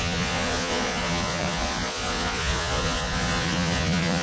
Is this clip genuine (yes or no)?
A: no